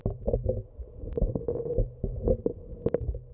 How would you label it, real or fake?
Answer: real